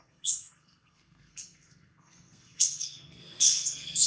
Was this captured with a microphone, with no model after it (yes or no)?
no